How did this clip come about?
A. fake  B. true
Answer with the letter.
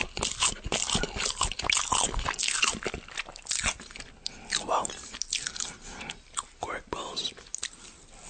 B